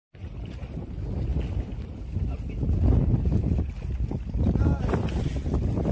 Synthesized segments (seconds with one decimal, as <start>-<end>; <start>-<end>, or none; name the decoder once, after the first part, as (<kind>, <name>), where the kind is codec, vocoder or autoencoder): none